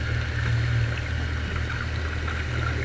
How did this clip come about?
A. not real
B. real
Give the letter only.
B